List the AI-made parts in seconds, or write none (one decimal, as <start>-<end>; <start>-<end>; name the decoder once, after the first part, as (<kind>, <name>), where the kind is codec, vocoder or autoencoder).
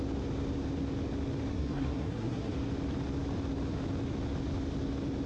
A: 1.5-2.5 (codec, SNAC)